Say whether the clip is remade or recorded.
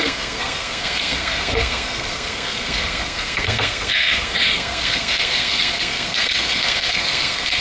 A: remade